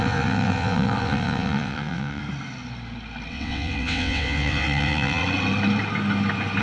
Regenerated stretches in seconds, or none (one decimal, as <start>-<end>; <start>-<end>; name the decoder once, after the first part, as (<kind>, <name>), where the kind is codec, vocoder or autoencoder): 0.0-2.2 (vocoder, WaveNeXt); 3.3-5.2

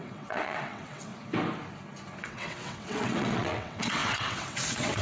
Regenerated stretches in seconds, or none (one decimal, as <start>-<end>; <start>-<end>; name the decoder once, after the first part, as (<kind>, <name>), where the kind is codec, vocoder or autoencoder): 0.0-1.1 (vocoder, WaveNeXt); 2.2-5.0

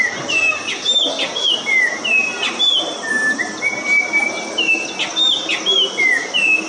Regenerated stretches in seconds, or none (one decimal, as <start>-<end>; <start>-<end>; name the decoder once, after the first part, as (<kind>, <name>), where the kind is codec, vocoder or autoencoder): none

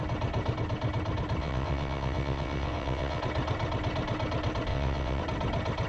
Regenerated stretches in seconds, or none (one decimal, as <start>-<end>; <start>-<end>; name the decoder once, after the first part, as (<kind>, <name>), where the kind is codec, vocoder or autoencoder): 1.4-3.2 (vocoder, WaveNeXt); 4.7-5.2

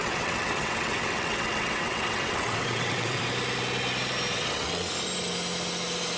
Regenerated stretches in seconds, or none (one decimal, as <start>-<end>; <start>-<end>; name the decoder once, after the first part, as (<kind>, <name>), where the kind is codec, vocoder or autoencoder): 0.0-3.2 (vocoder, WaveNeXt); 4.3-4.9

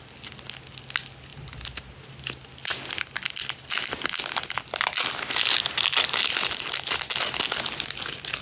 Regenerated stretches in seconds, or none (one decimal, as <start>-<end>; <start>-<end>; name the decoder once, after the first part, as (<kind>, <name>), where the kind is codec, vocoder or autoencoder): none

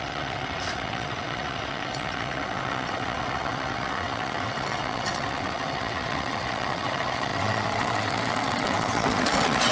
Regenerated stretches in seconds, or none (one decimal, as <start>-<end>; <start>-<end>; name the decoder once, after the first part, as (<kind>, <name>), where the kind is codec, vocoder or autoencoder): 0.0-9.7 (vocoder, WaveNeXt)